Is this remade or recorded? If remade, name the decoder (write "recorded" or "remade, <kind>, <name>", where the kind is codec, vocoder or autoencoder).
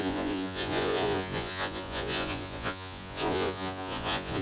remade, vocoder, Vocos